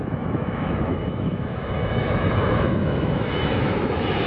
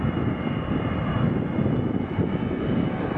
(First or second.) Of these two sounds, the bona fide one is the second